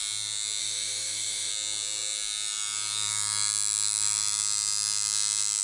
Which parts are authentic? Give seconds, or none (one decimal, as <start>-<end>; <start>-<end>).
0.0-0.6; 1.5-5.6